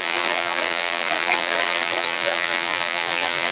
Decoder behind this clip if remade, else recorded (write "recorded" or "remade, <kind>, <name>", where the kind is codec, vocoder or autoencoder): remade, vocoder, BigVGAN v2